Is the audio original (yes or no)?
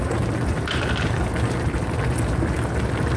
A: yes